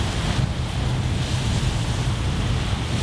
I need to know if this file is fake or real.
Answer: real